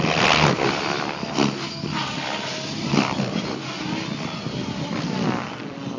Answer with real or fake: real